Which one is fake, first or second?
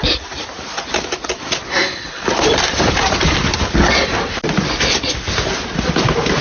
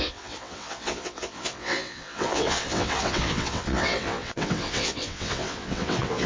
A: second